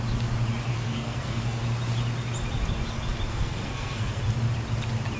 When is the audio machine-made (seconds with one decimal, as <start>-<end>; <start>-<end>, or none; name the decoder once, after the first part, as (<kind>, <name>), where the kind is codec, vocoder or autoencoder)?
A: 0.7-1.6 (codec, SNAC); 3.3-4.2